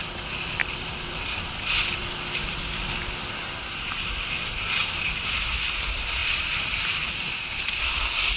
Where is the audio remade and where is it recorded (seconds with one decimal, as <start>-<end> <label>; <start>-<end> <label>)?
0.0-0.6 recorded; 0.6-1.2 remade; 1.2-4.8 recorded; 4.8-5.5 remade; 5.5-6.2 recorded; 6.2-7.8 remade; 7.8-8.4 recorded